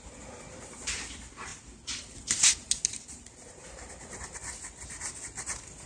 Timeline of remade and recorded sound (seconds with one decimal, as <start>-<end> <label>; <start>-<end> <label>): 0.0-5.9 recorded